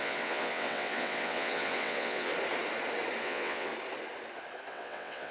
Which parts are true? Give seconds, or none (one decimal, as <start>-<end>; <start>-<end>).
2.3-3.2; 3.7-4.7

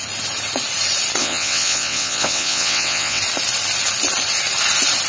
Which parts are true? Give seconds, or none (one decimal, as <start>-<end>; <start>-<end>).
0.0-1.2; 3.2-5.1

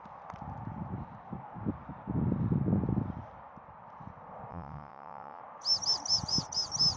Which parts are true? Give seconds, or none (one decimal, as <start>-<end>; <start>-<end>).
0.0-4.5; 5.4-7.0